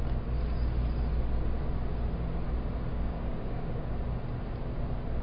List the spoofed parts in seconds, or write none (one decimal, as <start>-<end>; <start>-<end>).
2.9-3.9